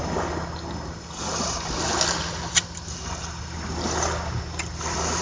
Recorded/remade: recorded